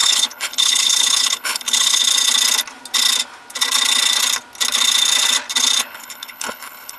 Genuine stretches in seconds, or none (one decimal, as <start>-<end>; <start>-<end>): 2.0-5.8

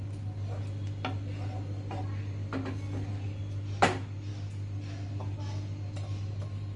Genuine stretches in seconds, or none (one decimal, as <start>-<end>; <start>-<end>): 0.0-6.8

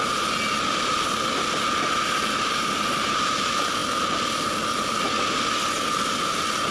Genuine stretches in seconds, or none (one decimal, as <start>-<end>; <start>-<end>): 0.0-6.7

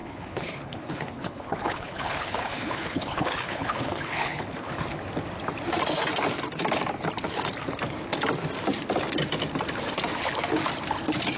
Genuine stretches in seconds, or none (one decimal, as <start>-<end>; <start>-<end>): 4.7-11.4

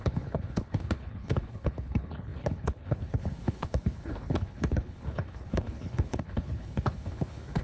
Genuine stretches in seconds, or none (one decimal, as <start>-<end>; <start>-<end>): none

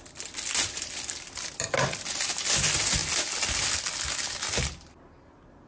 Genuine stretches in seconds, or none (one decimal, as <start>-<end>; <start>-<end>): 0.0-5.7

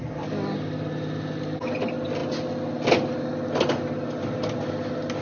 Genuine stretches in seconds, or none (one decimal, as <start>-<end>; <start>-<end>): 0.0-5.2

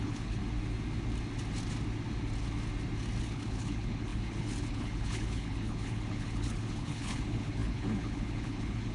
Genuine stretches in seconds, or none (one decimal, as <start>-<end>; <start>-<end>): 0.4-3.2